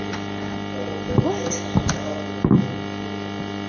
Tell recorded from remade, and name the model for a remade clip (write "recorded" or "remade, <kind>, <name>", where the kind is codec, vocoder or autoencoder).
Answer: recorded